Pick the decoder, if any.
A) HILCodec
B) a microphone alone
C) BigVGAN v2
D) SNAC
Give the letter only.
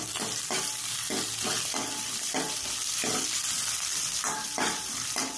C